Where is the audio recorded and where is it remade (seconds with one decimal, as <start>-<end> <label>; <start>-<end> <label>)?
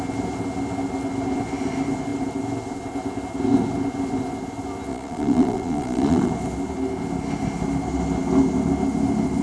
0.0-4.9 recorded; 4.9-6.3 remade; 6.3-9.4 recorded